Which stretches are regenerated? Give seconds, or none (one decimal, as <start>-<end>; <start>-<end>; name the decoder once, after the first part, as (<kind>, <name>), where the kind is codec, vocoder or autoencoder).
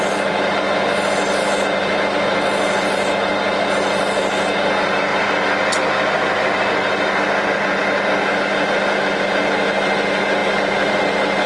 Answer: 5.1-7.8 (vocoder, BigVGAN v2); 10.4-11.0